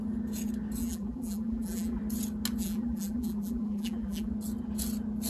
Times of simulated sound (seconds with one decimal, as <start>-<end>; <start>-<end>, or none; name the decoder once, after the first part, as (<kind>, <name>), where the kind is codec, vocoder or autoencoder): 0.8-2.0 (vocoder, BigVGAN v2); 2.6-4.3